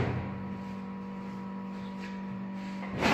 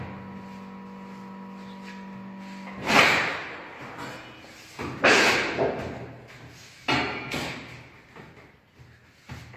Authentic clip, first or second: second